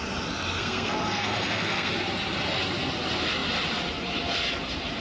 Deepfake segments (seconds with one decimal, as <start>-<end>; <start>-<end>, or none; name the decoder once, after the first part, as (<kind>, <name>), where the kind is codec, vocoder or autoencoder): 0.6-1.9 (codec, SNAC)